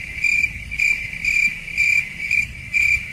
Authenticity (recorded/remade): recorded